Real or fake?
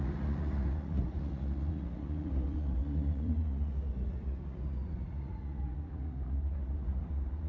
fake